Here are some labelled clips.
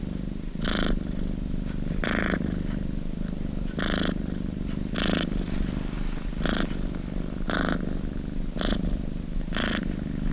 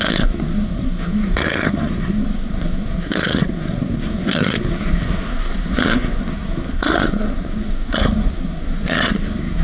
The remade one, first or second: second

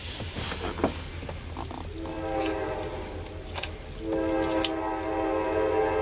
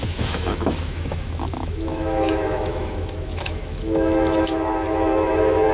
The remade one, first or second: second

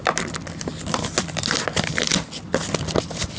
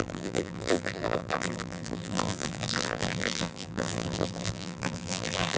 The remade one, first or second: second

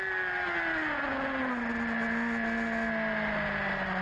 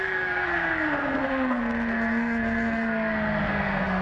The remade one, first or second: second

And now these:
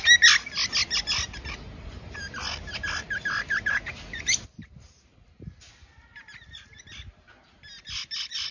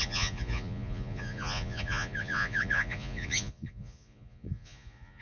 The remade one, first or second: second